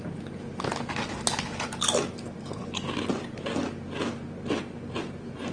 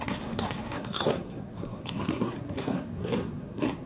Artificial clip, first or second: second